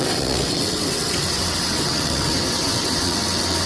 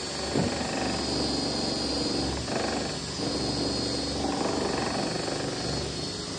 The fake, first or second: first